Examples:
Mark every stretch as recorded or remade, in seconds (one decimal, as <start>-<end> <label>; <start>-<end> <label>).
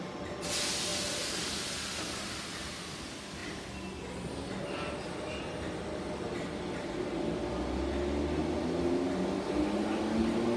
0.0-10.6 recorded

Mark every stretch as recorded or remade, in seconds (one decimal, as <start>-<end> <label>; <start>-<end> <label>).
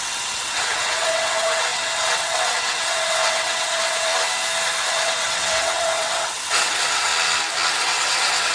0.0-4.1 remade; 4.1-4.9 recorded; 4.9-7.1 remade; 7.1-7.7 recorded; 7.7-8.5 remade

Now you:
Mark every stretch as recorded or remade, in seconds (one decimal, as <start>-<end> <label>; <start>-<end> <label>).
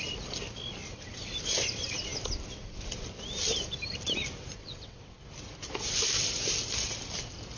0.0-4.6 recorded; 4.6-5.2 remade; 5.2-7.6 recorded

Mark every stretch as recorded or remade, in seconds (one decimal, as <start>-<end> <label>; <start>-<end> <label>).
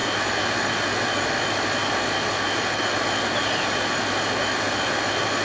0.0-5.4 recorded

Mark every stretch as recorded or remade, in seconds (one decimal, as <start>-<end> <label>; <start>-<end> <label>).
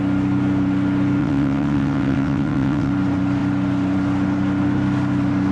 0.0-1.2 recorded; 1.2-2.9 remade; 2.9-5.5 recorded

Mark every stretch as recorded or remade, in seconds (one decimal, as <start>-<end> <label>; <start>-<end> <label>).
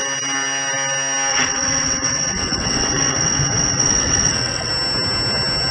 0.0-1.3 recorded; 1.3-4.7 remade; 4.7-5.7 recorded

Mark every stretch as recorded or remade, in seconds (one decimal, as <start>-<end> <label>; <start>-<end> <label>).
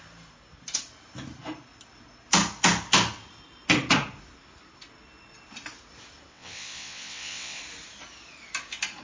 0.0-6.3 recorded; 6.3-7.6 remade; 7.6-9.0 recorded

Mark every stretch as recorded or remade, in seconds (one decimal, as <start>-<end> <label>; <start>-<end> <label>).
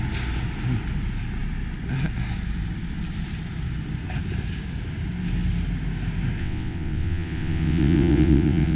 0.0-6.4 recorded; 6.4-8.8 remade